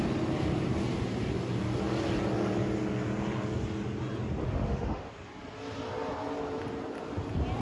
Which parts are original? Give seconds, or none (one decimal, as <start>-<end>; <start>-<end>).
0.0-4.4; 5.1-7.6